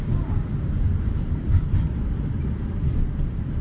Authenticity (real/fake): fake